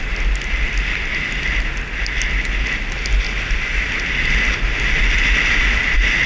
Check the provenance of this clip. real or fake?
real